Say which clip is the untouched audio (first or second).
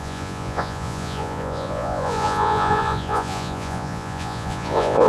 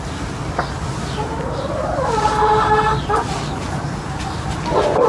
second